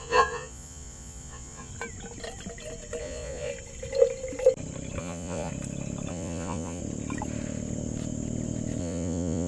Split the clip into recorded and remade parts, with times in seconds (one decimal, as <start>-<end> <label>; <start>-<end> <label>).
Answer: 0.0-1.7 remade; 1.7-3.0 recorded; 3.0-3.5 remade; 3.5-5.0 recorded; 5.0-5.5 remade; 5.5-6.1 recorded; 6.1-6.8 remade; 6.8-8.8 recorded; 8.8-9.5 remade